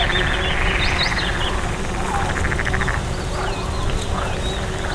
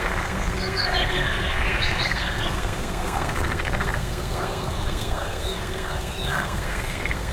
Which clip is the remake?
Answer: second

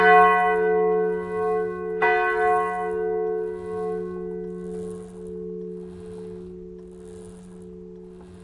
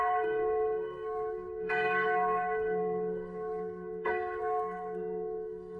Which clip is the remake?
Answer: second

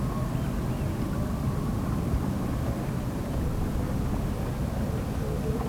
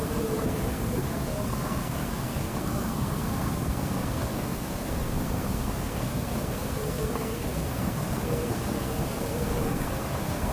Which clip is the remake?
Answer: second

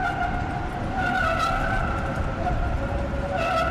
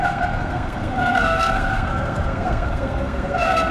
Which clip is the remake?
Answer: second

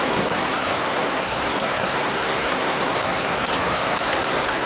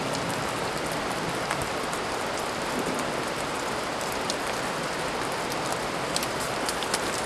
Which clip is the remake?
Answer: first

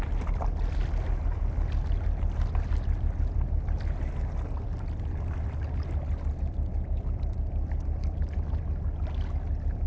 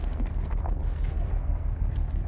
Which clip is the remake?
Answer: second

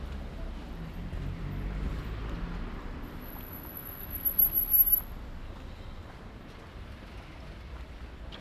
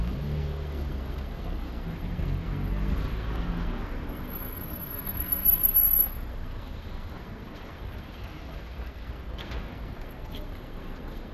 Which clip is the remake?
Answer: second